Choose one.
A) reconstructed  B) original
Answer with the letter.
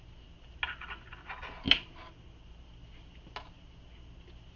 B